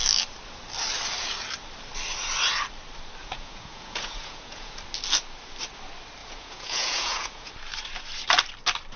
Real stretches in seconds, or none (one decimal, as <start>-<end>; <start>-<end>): 0.0-3.2; 4.8-6.2; 7.5-9.0